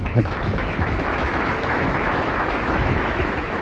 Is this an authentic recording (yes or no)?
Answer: no